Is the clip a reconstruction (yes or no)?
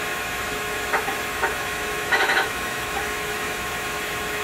yes